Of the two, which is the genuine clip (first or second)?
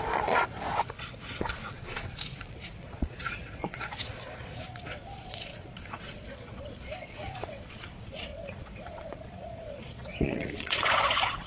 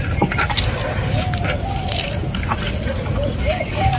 second